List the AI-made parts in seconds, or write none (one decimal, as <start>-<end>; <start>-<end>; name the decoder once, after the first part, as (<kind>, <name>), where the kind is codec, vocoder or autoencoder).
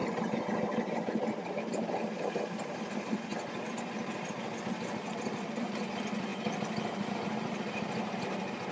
1.5-8.7 (vocoder, BigVGAN v2)